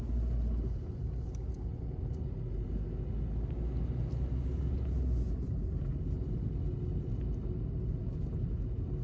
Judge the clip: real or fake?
real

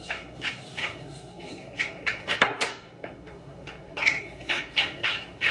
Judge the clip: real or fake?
fake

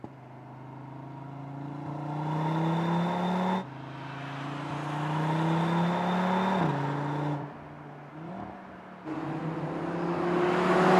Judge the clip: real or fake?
real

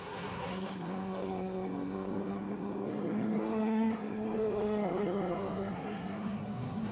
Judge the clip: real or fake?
fake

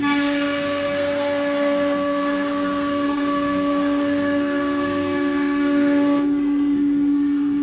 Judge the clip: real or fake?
fake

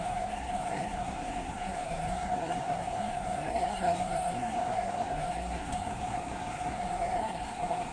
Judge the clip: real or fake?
fake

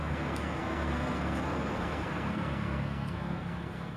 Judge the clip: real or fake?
fake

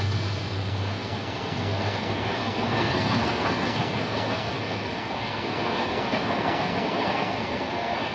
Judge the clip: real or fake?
fake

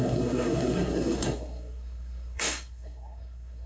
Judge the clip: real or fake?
fake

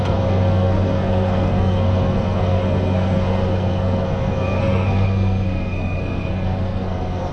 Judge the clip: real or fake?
fake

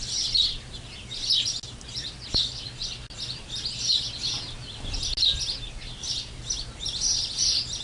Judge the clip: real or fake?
real